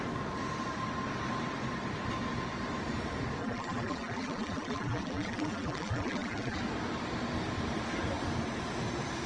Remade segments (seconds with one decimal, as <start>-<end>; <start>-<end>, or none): 3.4-6.6